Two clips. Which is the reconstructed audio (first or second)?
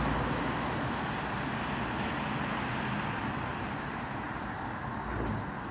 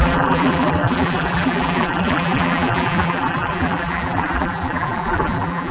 second